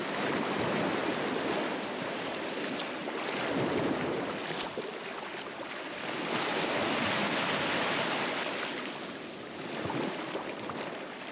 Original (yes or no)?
yes